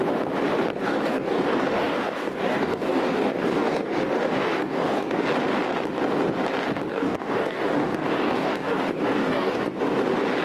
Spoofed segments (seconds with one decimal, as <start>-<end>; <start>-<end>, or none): 0.7-5.2; 6.9-9.8